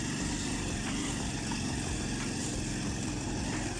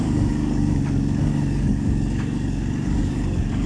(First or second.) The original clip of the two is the first